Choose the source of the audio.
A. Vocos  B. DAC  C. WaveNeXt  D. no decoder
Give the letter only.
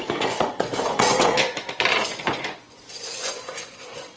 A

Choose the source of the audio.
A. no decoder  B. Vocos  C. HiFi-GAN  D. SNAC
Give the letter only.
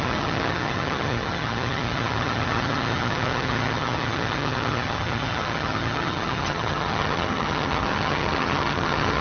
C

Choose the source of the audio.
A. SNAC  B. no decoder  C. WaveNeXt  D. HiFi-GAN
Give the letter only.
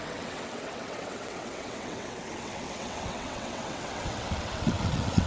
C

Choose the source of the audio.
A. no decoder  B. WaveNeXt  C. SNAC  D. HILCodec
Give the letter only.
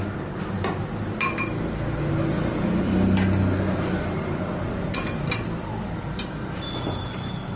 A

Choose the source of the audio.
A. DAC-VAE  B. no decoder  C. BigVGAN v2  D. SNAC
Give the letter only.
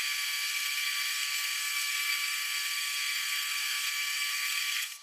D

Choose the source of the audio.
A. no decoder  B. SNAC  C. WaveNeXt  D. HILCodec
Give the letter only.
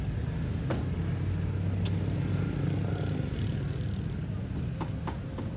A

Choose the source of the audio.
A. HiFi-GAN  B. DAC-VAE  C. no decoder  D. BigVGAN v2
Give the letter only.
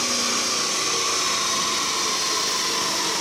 C